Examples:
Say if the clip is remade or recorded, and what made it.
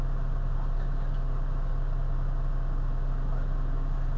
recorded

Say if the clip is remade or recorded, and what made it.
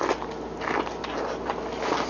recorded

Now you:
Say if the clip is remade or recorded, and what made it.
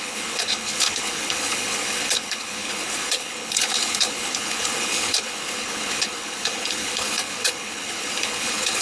remade, codec, HILCodec